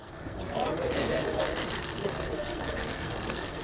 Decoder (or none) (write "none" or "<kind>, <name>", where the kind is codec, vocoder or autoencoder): codec, SNAC